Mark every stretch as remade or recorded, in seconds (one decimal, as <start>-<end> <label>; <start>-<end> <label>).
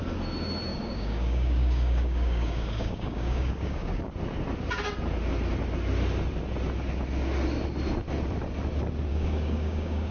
0.0-0.7 recorded; 0.7-4.0 remade; 4.0-9.1 recorded; 9.1-10.1 remade